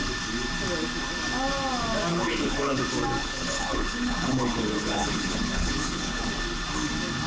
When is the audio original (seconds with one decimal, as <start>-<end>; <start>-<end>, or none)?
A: 0.0-2.1; 2.8-3.2; 6.3-7.3